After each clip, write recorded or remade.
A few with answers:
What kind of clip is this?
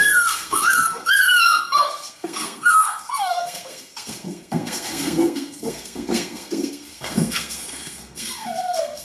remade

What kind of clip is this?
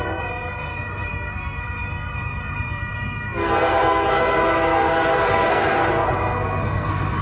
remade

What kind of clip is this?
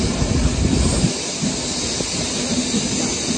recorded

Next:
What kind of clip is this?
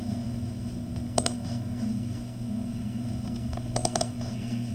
remade